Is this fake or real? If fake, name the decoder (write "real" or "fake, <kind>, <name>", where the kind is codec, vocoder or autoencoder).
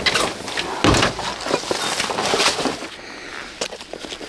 real